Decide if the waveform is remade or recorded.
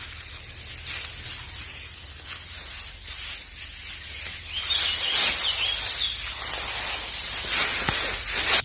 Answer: recorded